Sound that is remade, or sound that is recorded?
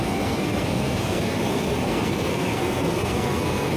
remade